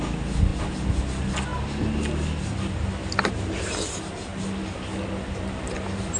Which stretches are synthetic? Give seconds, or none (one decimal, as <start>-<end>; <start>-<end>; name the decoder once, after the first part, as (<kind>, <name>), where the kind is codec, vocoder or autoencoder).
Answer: none